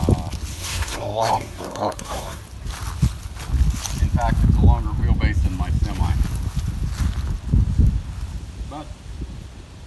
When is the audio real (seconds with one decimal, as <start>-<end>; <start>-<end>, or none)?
0.0-0.5; 2.4-9.9